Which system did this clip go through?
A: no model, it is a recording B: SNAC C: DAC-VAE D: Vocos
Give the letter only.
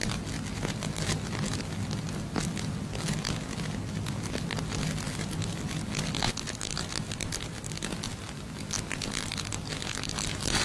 A